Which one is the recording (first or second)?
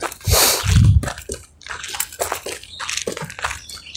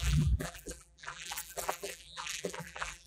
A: first